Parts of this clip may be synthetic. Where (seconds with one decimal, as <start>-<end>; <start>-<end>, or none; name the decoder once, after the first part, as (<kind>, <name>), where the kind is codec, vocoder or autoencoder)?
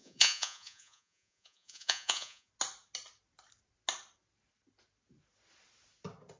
0.0-2.5 (vocoder, Vocos)